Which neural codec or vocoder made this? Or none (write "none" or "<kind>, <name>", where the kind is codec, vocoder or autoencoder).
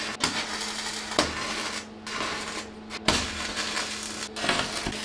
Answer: none